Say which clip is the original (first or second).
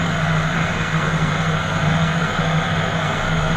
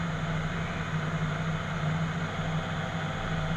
second